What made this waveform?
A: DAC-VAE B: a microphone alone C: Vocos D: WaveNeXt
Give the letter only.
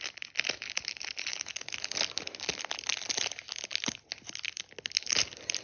B